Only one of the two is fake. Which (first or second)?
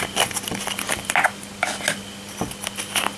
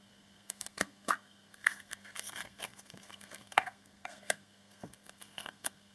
second